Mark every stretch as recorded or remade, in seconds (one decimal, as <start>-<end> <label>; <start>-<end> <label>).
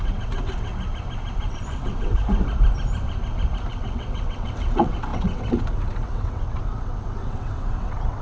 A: 0.0-0.7 remade; 0.7-1.5 recorded; 1.5-2.2 remade; 2.2-3.7 recorded; 3.7-8.2 remade